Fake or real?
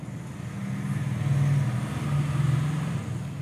real